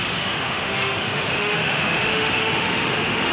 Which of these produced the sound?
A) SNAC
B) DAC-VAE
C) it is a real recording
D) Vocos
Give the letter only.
B